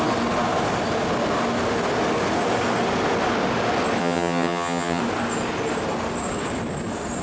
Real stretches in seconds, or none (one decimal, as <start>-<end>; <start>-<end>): 0.0-4.0; 5.0-7.2